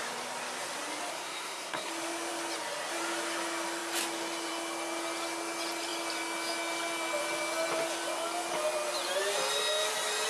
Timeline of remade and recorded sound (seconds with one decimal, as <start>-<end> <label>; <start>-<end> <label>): 0.0-1.1 recorded; 1.1-1.9 remade; 1.9-10.3 recorded